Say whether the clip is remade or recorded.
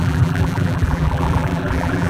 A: remade